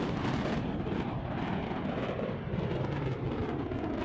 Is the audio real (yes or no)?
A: yes